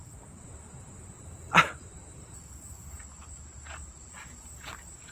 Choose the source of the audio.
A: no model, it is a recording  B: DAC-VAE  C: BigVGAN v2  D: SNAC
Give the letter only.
C